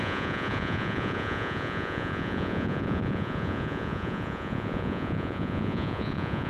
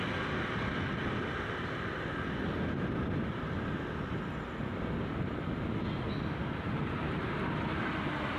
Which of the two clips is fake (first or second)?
first